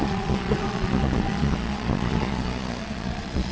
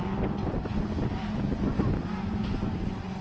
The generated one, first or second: first